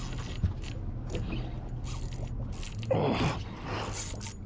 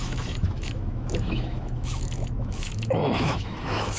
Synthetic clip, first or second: second